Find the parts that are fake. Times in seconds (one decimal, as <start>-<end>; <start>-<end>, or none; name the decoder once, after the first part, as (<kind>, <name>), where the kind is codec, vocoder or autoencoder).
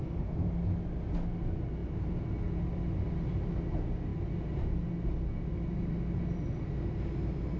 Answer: none